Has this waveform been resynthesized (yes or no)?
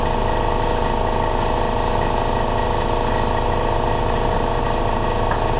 no